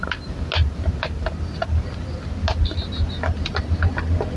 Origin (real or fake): real